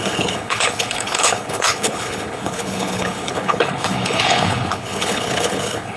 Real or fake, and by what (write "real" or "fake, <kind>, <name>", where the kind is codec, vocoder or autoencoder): fake, codec, HILCodec